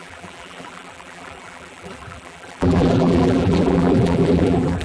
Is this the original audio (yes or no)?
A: no